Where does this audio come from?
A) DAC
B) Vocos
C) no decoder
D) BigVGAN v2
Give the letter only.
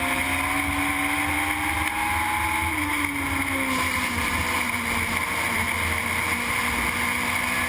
C